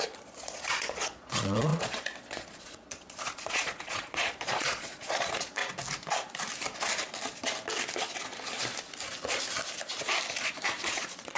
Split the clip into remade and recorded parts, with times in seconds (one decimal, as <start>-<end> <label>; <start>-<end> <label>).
0.0-5.6 remade; 5.6-10.4 recorded; 10.4-11.4 remade